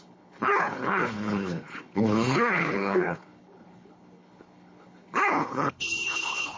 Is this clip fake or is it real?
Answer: fake